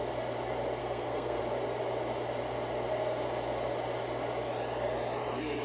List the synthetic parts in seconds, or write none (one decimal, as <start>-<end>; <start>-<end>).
0.8-1.4